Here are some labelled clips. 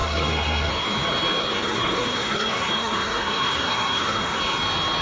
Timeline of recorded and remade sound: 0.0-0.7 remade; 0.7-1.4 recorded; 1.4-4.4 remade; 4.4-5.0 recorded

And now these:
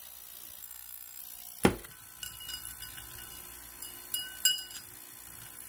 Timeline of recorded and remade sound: 0.0-0.6 recorded; 0.6-1.2 remade; 1.2-5.7 recorded

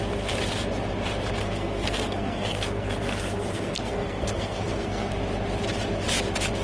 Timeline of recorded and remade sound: 0.0-1.4 recorded; 1.4-5.1 remade; 5.1-6.6 recorded

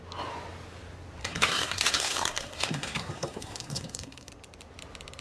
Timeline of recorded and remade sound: 0.0-1.2 recorded; 1.2-4.3 remade; 4.3-5.2 recorded

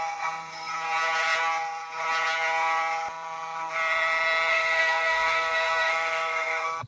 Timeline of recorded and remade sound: 0.0-0.7 remade; 0.7-4.5 recorded; 4.5-6.9 remade